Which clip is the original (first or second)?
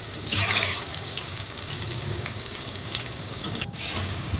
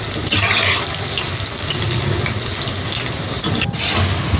second